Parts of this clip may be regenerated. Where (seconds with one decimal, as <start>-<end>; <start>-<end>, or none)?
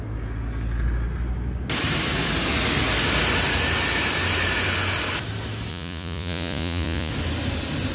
5.7-7.1